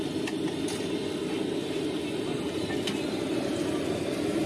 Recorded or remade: recorded